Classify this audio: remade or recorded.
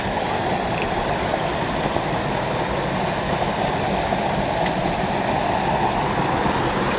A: recorded